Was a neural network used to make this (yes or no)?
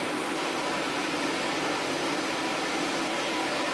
no